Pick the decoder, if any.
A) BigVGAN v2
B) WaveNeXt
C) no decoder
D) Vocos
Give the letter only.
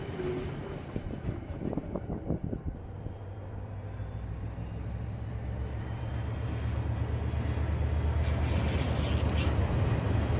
C